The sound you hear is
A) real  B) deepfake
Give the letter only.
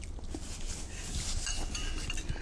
A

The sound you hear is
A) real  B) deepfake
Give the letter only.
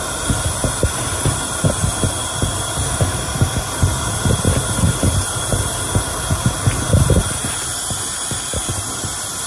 A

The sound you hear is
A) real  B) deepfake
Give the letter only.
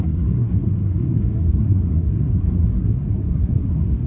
B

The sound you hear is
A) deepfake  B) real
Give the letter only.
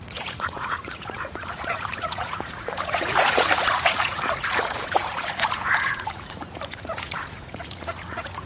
A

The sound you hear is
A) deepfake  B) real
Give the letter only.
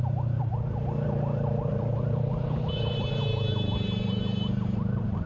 A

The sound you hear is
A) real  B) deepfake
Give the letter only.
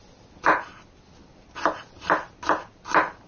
A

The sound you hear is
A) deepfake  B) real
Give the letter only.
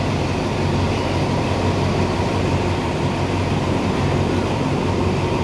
A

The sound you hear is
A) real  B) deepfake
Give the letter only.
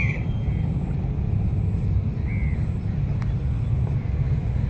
A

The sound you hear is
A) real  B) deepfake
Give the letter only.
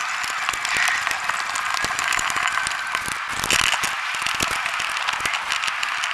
A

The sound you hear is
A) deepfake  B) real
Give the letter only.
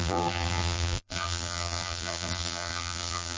A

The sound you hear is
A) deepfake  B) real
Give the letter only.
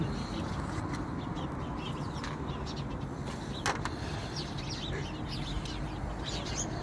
B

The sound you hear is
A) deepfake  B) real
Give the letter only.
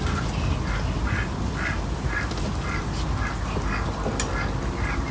B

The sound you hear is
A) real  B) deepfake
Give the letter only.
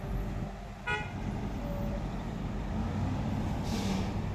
A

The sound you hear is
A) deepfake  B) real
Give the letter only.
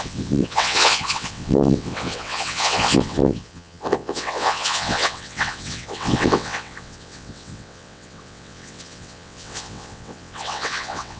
A